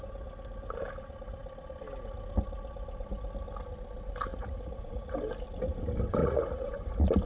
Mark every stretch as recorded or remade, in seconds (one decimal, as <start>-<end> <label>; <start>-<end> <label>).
0.0-4.3 recorded; 4.3-5.1 remade; 5.1-6.2 recorded; 6.2-6.8 remade; 6.8-7.3 recorded